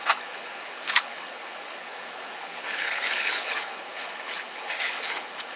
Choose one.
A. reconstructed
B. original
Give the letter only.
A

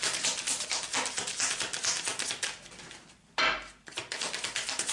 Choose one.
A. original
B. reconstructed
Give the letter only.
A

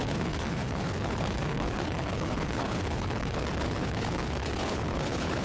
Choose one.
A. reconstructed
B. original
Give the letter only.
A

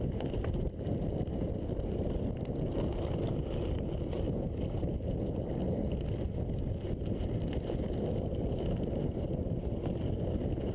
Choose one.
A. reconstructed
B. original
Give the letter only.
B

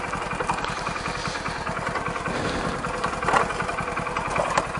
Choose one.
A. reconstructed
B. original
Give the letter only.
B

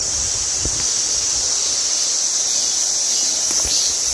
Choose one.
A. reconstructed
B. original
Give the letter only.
B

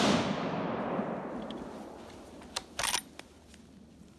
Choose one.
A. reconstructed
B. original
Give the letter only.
B